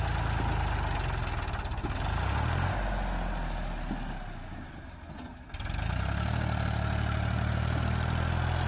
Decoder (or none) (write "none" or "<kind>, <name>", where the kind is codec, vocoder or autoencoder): none